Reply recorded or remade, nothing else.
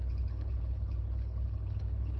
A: remade